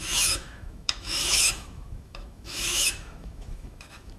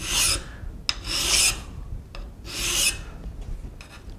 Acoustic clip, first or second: second